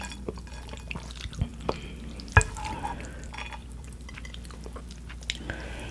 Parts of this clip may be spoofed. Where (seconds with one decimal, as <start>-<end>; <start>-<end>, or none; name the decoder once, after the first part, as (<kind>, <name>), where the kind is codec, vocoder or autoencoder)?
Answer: 3.6-4.1 (vocoder, BigVGAN v2)